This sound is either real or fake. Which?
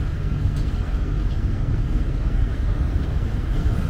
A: fake